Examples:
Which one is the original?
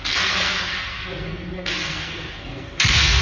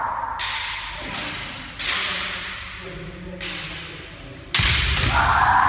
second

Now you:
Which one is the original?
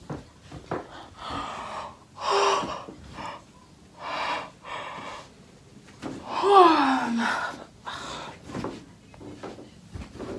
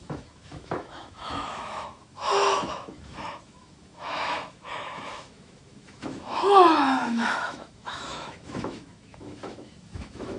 first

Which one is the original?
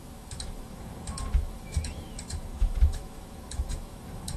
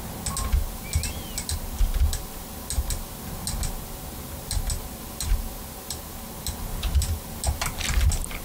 second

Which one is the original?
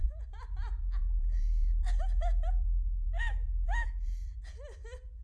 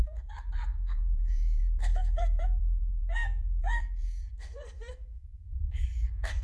first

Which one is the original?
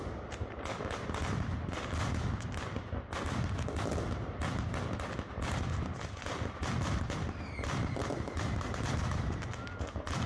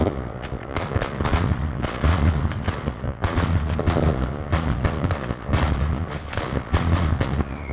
first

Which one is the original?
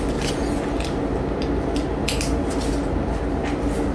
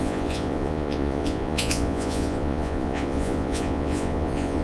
first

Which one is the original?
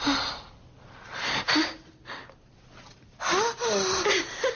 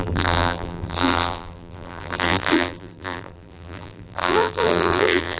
first